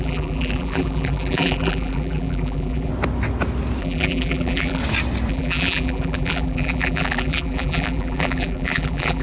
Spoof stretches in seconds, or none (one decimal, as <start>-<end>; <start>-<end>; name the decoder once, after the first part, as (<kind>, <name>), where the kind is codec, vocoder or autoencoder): 0.0-2.9 (vocoder, BigVGAN v2); 3.8-4.8; 5.3-9.2